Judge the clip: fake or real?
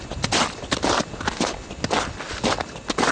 real